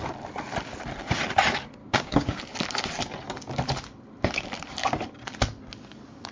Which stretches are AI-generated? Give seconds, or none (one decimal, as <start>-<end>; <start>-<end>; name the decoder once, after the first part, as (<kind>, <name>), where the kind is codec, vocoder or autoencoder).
1.8-2.4 (codec, DAC)